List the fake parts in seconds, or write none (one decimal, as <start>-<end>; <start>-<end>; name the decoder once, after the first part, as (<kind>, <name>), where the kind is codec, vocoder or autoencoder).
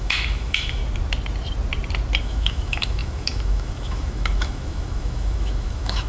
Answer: 0.0-0.8 (autoencoder, DAC-VAE); 2.2-6.1